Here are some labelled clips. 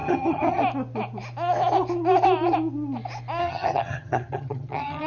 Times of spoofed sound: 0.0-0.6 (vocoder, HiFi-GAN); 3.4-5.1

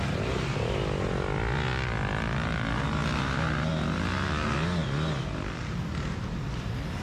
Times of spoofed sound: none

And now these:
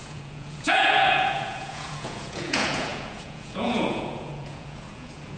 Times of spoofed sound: 0.0-5.4 (vocoder, Vocos)